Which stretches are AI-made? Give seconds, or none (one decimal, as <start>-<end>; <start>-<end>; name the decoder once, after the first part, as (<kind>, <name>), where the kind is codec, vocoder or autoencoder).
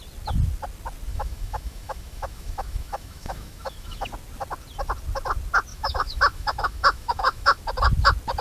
1.1-4.1 (autoencoder, DAC-VAE); 5.7-7.6